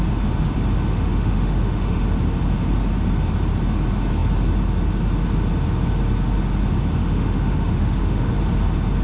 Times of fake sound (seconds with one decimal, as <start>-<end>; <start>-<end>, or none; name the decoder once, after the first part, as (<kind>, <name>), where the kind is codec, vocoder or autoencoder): 0.9-2.0 (autoencoder, DAC-VAE); 7.0-8.3